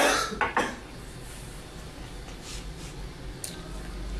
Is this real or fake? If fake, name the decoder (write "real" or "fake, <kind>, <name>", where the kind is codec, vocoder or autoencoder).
real